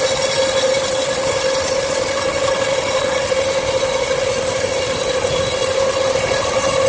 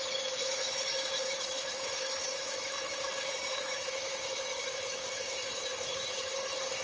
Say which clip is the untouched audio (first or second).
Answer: first